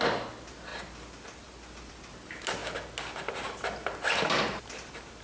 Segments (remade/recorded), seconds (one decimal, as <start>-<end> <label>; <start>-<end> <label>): 0.0-0.7 recorded; 0.7-1.9 remade; 1.9-5.2 recorded